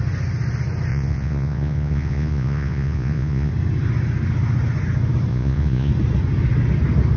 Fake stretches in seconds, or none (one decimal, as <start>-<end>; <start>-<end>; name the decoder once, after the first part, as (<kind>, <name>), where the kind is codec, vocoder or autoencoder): 0.9-3.5 (vocoder, Vocos); 5.3-5.9